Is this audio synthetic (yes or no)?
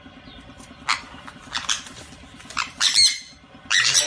no